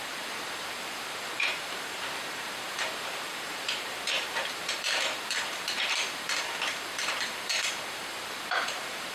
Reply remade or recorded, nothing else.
remade